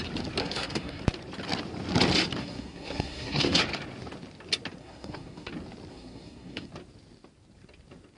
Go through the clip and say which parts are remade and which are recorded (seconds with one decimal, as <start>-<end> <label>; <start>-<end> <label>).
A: 0.0-0.4 recorded; 0.4-1.0 remade; 1.0-2.4 recorded; 2.4-3.6 remade; 3.6-4.8 recorded; 4.8-5.5 remade; 5.5-5.9 recorded; 5.9-6.7 remade; 6.7-8.2 recorded